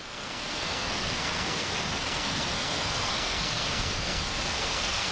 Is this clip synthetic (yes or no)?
yes